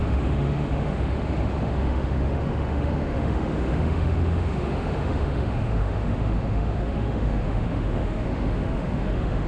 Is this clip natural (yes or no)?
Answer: no